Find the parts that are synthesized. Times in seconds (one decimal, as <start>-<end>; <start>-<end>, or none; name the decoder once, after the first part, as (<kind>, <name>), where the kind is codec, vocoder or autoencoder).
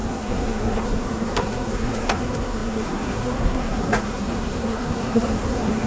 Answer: 0.0-5.9 (codec, SNAC)